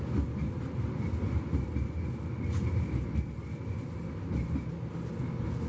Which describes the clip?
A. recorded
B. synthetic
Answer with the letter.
A